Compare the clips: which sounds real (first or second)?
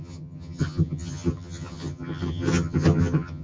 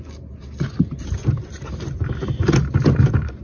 second